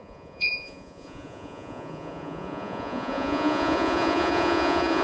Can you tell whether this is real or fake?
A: fake